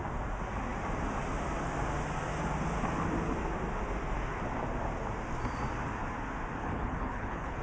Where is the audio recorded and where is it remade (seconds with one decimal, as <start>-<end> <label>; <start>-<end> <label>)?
0.0-6.6 recorded; 6.6-7.6 remade